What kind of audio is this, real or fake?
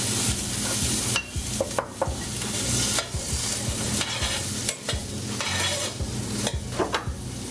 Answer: real